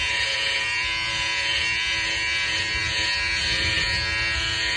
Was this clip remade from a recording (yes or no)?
yes